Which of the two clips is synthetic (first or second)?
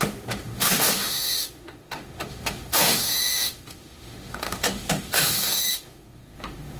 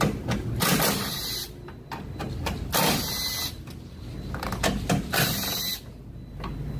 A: first